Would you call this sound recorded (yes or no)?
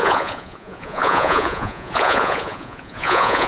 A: no